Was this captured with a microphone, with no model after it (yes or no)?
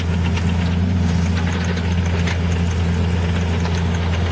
yes